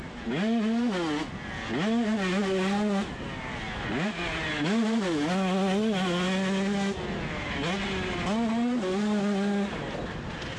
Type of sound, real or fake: real